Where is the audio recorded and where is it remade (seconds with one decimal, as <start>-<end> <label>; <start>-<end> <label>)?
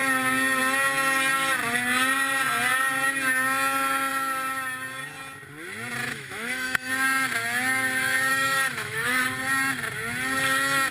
0.0-6.0 recorded; 6.0-6.9 remade; 6.9-8.3 recorded; 8.3-9.2 remade; 9.2-10.9 recorded